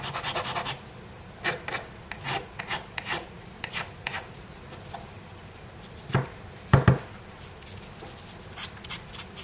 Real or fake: real